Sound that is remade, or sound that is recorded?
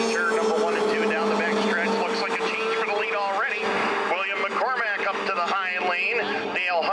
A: recorded